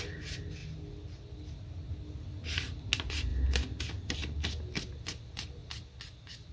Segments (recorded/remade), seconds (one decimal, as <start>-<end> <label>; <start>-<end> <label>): 0.0-6.5 recorded